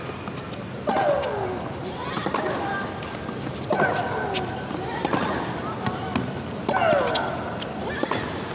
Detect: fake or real real